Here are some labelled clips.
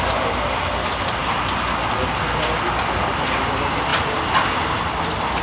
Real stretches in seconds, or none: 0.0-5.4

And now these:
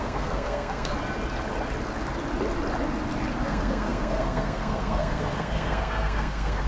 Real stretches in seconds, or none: 0.9-3.4

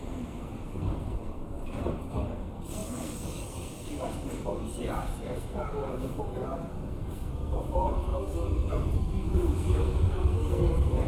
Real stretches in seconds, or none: none

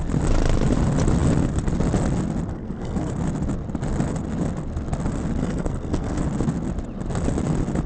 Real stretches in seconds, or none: 0.0-2.5; 3.1-5.4; 6.2-7.9

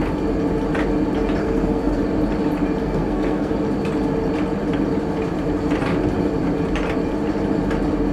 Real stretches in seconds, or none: 0.0-1.4; 2.0-2.8; 3.5-8.1

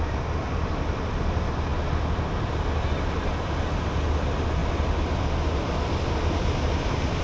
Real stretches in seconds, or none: 0.0-7.2

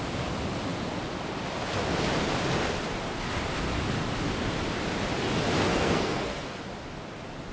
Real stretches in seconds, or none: 0.0-5.7; 6.6-7.5